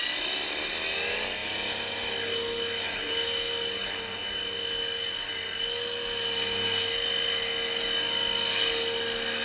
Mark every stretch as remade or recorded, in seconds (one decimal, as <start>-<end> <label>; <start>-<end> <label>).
0.0-9.4 recorded